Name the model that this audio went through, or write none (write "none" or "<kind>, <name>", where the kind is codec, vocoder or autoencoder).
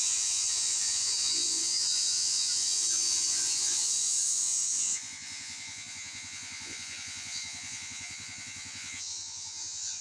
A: vocoder, Vocos